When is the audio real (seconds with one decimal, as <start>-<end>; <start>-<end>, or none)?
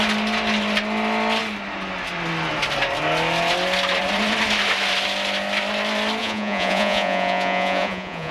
0.0-6.2